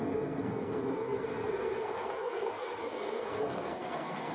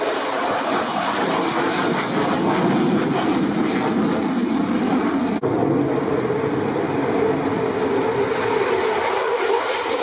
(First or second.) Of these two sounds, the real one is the second